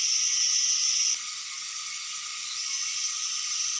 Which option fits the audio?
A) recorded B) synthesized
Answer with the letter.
A